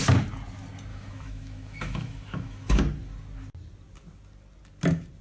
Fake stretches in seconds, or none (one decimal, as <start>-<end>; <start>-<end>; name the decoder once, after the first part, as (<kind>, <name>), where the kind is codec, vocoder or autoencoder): 0.9-2.8 (autoencoder, DAC-VAE)